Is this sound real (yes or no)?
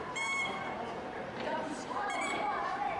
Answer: no